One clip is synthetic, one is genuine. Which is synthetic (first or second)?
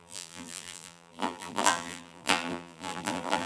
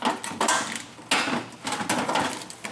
first